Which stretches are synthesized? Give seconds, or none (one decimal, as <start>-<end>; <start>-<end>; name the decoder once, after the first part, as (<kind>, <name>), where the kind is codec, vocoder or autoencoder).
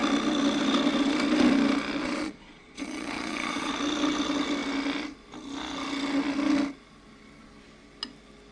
2.0-3.7 (vocoder, Vocos)